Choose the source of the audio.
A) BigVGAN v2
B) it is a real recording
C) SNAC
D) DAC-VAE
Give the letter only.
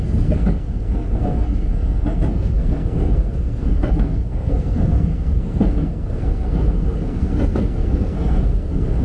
C